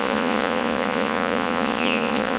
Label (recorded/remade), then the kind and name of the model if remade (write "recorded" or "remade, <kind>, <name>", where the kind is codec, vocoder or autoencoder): remade, vocoder, Vocos